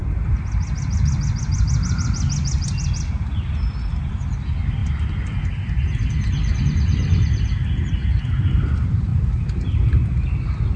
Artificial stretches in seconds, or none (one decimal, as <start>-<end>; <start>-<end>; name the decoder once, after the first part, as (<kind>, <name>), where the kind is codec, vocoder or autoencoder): none